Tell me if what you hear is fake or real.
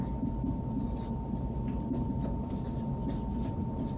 real